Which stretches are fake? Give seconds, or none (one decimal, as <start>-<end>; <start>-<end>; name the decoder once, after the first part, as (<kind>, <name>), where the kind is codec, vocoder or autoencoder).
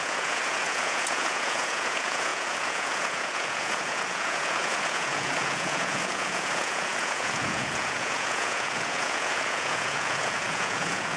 0.0-11.2 (vocoder, Vocos)